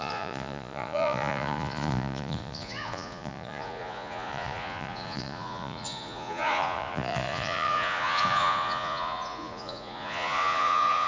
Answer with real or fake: fake